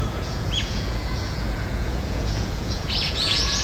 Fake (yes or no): yes